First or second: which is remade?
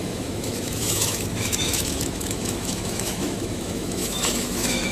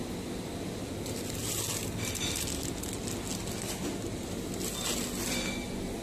first